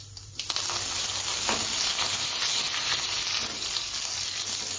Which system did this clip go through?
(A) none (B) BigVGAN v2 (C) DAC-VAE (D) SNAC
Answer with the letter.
A